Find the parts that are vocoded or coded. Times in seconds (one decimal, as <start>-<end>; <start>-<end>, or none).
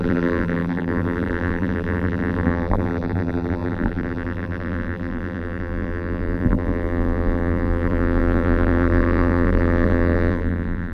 0.0-10.9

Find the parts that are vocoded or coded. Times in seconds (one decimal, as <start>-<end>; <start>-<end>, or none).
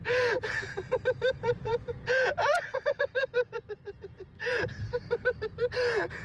0.0-0.8; 1.3-4.7; 5.8-6.2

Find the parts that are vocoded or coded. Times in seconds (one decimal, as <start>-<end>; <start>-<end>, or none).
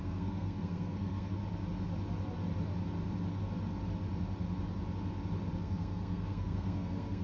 0.0-1.4; 5.6-7.2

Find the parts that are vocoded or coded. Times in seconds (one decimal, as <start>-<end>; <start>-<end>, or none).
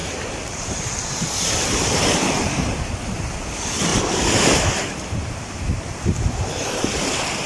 0.0-2.9; 3.9-6.7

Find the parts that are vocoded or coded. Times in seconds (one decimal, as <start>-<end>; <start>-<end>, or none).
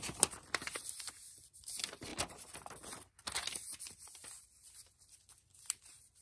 none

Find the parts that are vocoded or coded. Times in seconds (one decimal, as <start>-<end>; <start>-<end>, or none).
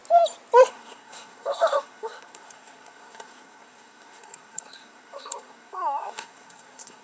0.7-7.0